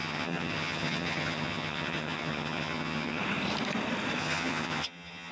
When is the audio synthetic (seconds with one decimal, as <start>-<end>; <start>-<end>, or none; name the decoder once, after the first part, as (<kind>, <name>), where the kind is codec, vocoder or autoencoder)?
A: 0.0-3.2 (vocoder, HiFi-GAN); 4.2-5.3